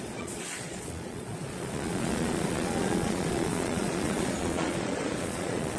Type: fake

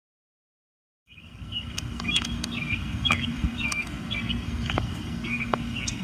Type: fake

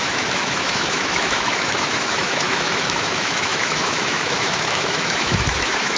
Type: fake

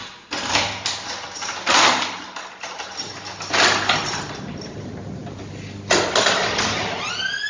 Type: real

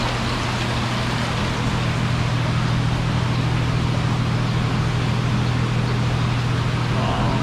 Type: real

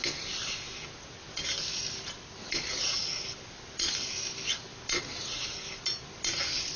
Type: real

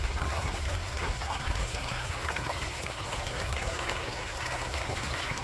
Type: fake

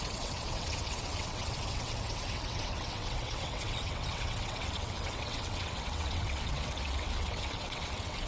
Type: fake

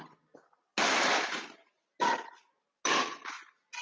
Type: real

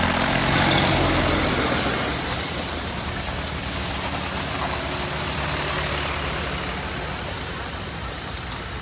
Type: real